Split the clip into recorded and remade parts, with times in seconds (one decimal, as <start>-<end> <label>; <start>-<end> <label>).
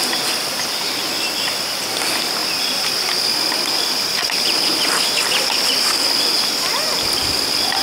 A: 0.0-7.8 recorded